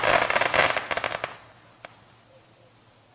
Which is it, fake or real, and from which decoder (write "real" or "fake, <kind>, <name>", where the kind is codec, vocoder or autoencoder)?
real